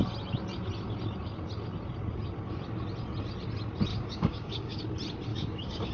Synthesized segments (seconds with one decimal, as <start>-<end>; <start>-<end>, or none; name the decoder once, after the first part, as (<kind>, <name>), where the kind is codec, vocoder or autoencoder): 3.9-4.8 (codec, DAC); 5.3-5.9